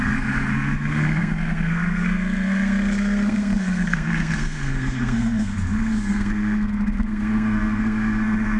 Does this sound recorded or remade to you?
remade